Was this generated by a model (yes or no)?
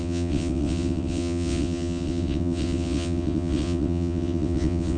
yes